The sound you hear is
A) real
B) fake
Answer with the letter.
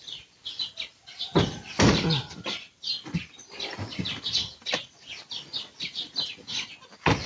A